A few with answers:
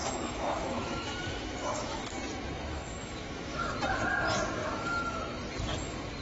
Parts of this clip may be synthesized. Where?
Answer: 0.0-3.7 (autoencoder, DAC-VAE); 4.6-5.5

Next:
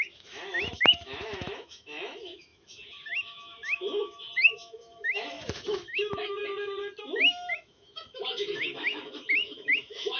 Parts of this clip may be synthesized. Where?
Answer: 0.0-6.4 (autoencoder, DAC-VAE); 7.0-10.2

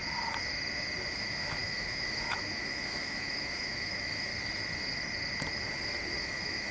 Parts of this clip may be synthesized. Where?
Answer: 1.1-4.3 (autoencoder, DAC-VAE); 6.2-6.7

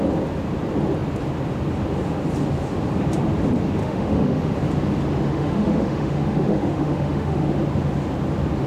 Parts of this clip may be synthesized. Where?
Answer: 3.8-4.5 (autoencoder, DAC-VAE); 5.3-7.5

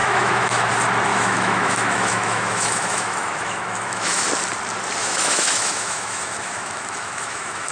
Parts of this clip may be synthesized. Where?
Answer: 0.0-0.7 (autoencoder, DAC-VAE); 1.1-4.3; 5.0-7.7